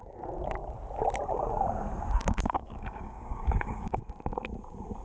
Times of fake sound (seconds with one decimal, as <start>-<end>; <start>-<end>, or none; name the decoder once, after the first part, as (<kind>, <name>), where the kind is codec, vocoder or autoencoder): 2.2-4.0 (codec, DAC)